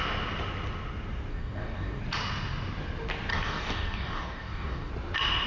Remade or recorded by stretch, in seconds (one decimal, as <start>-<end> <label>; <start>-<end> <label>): 0.0-1.3 recorded; 1.3-2.0 remade; 2.0-3.3 recorded; 3.3-4.9 remade; 4.9-5.5 recorded